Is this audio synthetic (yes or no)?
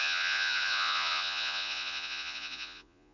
yes